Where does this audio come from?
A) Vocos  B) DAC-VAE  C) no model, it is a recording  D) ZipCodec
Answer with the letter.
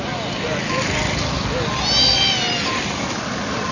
C